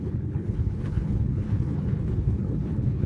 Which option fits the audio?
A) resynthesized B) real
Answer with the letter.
A